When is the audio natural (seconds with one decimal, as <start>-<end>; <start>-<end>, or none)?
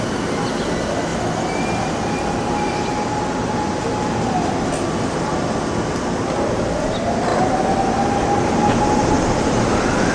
0.0-10.1